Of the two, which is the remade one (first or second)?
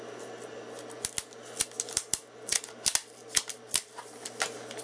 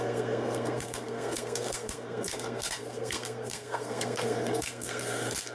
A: second